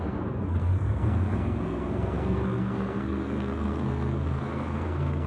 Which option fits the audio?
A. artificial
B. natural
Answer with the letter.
A